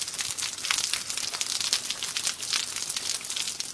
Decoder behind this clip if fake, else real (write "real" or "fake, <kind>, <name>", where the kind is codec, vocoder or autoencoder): real